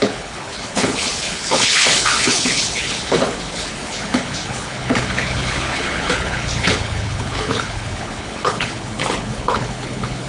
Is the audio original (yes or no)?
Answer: no